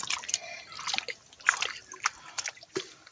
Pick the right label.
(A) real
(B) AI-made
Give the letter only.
A